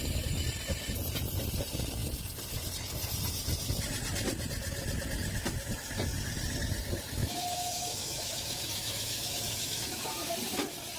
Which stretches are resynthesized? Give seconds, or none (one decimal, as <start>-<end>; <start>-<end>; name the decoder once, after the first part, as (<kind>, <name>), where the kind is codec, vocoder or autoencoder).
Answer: 7.2-10.3 (autoencoder, DAC-VAE)